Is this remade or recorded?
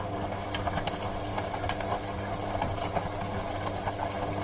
recorded